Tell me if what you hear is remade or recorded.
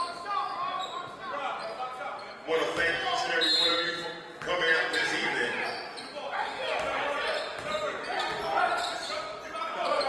recorded